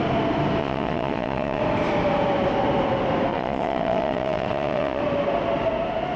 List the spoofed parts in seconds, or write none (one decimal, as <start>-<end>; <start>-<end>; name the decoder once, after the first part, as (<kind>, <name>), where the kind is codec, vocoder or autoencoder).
0.6-1.6 (vocoder, Vocos); 3.3-5.0